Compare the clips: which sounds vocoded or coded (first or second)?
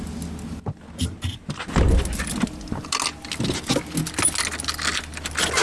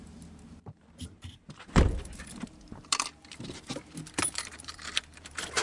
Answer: second